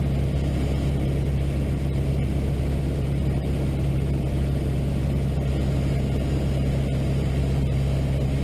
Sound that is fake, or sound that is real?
real